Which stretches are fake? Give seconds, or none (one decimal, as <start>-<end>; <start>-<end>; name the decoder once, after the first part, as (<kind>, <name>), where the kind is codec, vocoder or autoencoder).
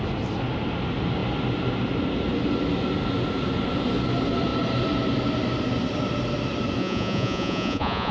6.8-8.1 (vocoder, Vocos)